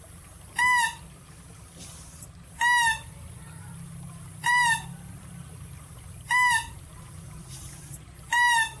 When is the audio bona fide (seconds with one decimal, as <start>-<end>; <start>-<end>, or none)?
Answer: 0.8-3.0

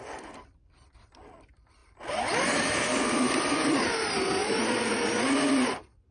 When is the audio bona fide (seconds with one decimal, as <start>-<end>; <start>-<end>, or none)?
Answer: 4.4-4.9

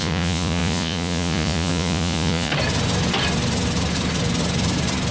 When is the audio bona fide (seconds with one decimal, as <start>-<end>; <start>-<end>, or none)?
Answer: 2.5-5.1